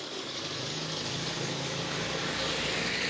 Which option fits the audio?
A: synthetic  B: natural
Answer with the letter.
A